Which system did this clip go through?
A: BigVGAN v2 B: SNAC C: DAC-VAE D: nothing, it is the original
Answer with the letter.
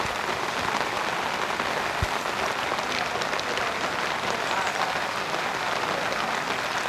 D